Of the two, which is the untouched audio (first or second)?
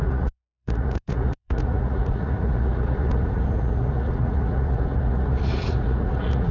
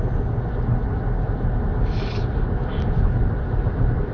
second